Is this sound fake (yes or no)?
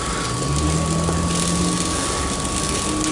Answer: no